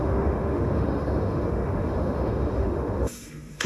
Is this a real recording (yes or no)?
no